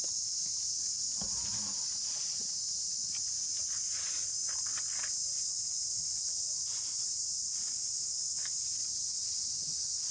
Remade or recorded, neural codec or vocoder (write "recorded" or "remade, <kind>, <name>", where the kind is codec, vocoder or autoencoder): recorded